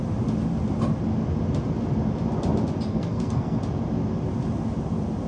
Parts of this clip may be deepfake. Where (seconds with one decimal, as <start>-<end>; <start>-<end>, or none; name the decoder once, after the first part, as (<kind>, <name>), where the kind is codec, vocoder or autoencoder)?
2.9-3.6 (codec, SNAC)